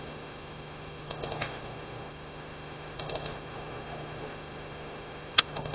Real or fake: fake